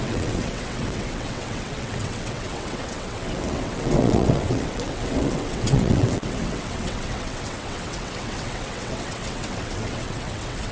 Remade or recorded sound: remade